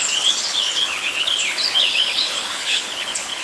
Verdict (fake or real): fake